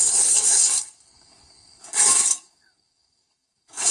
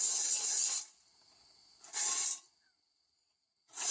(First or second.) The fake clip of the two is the first